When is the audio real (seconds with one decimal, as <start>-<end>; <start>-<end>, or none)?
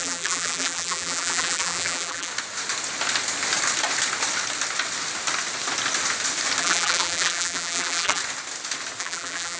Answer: 2.3-6.6; 8.2-9.0